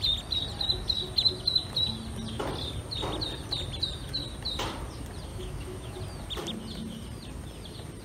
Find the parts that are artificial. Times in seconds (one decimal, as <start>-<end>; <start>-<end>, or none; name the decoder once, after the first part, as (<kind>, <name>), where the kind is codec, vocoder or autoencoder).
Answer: 5.3-6.0 (autoencoder, DAC-VAE)

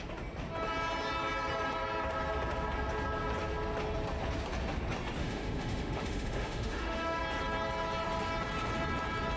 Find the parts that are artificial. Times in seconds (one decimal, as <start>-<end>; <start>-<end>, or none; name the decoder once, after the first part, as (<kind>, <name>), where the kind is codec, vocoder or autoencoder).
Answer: 5.2-7.2 (autoencoder, DAC-VAE)